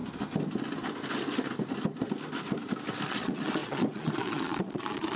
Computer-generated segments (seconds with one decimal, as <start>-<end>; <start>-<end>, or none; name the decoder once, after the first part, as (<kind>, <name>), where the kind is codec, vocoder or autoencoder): 3.1-5.2 (vocoder, Vocos)